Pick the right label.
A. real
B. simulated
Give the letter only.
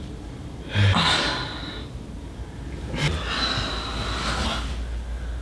A